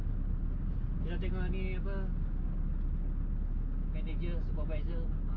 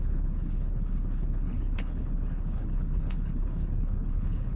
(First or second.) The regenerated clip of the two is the second